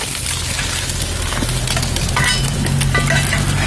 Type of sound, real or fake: real